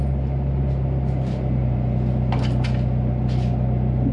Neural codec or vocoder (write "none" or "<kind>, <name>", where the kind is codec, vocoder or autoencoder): none